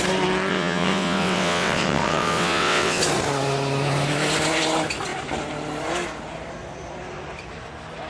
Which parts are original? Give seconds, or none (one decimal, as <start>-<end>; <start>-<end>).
0.0-0.5; 3.0-8.1